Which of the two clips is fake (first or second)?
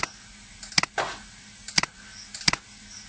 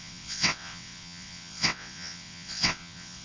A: second